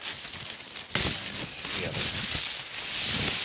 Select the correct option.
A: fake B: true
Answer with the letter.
B